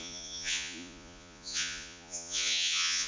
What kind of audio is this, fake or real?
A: fake